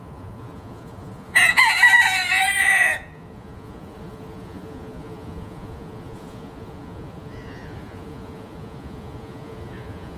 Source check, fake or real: fake